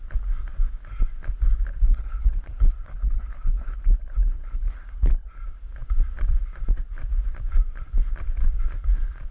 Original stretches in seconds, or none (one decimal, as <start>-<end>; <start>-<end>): 0.0-1.7; 5.3-9.3